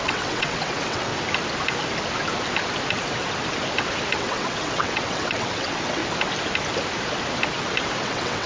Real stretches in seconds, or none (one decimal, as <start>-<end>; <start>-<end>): 1.1-4.2; 6.0-8.0